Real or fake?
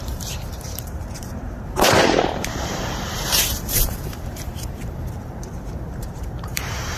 fake